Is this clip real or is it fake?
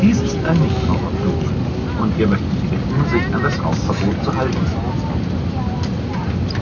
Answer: real